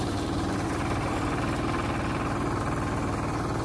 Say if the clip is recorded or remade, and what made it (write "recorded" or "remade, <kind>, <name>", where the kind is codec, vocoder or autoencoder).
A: recorded